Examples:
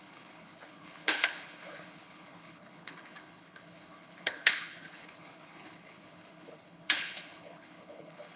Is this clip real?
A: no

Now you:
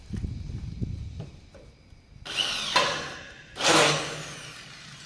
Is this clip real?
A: yes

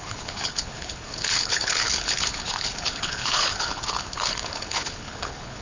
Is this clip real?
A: no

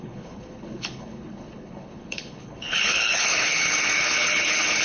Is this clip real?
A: no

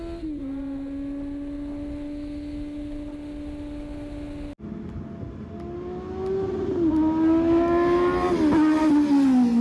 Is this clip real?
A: yes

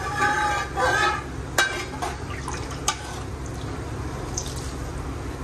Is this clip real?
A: yes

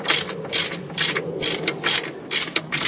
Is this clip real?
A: yes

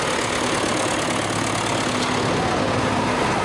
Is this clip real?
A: yes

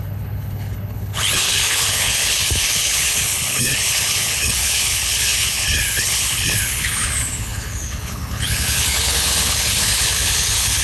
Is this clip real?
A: no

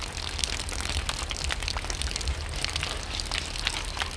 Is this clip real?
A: yes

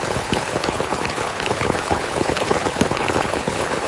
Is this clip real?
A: no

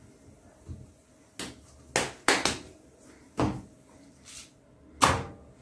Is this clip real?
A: yes